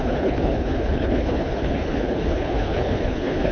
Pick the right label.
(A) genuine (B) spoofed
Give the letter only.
B